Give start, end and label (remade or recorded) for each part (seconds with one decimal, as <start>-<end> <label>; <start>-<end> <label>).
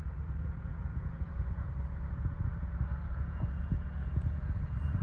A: 0.0-5.0 remade